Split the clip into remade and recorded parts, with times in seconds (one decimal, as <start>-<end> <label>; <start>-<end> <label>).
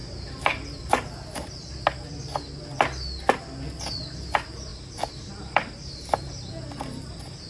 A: 0.0-0.9 remade; 0.9-4.7 recorded; 4.7-6.5 remade; 6.5-7.5 recorded